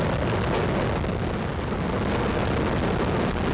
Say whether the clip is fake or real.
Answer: real